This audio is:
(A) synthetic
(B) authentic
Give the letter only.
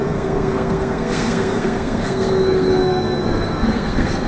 A